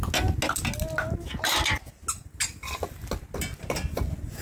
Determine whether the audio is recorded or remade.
recorded